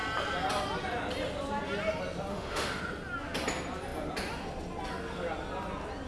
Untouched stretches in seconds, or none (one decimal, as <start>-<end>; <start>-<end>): 0.0-2.3; 2.8-6.1